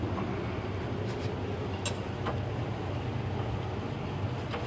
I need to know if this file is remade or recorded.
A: recorded